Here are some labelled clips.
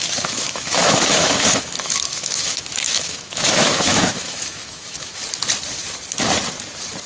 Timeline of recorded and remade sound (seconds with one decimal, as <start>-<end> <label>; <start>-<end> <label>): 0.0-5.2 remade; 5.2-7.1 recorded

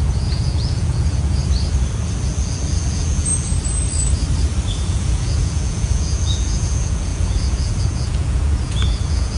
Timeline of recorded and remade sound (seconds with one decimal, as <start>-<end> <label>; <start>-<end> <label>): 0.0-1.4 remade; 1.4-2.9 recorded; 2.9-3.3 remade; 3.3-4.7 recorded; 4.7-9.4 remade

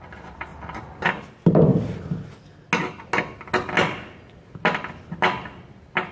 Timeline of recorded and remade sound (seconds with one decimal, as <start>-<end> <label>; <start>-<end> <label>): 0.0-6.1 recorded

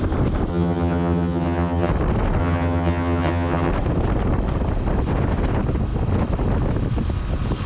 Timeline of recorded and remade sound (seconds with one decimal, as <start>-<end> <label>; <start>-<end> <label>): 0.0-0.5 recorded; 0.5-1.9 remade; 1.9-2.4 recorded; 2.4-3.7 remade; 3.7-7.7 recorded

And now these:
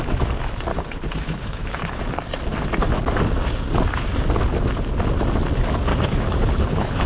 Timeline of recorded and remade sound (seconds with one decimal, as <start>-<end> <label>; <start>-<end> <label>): 0.0-0.7 recorded; 0.7-2.0 remade; 2.0-5.9 recorded; 5.9-7.1 remade

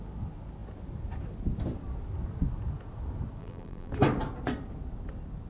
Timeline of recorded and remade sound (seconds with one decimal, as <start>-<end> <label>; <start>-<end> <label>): 0.0-3.4 recorded; 3.4-3.9 remade; 3.9-5.5 recorded

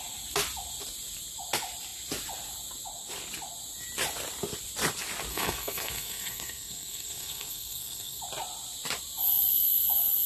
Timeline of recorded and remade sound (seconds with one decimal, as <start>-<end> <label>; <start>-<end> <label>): 0.0-5.3 recorded; 5.3-8.2 remade; 8.2-10.3 recorded